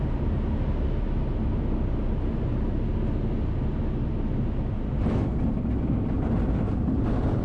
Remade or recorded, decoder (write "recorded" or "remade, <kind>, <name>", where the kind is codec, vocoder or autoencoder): recorded